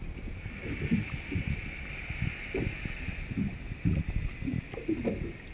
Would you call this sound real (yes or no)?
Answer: yes